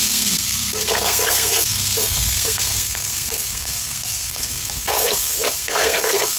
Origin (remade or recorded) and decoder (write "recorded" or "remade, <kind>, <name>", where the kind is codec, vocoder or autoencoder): remade, codec, SNAC